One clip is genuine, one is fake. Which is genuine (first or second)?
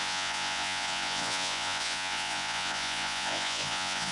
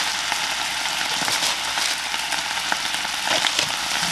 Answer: second